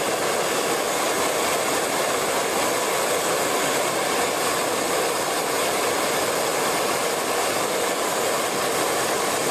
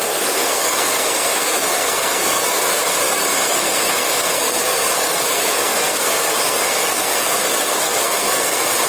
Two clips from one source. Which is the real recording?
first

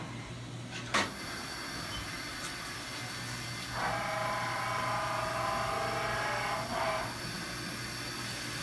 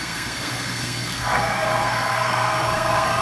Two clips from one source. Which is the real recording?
first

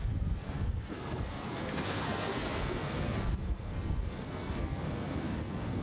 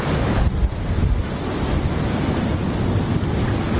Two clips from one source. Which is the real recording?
second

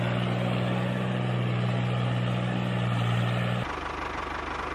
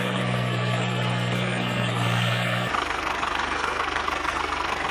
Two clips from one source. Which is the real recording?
first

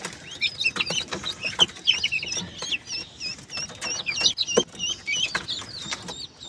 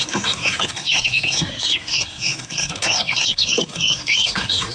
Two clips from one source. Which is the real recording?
first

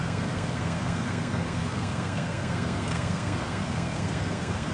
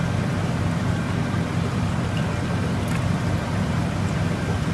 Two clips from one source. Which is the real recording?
second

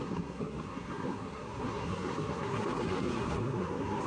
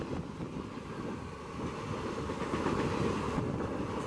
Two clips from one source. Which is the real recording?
second